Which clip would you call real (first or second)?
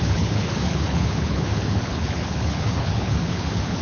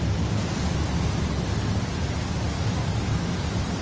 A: second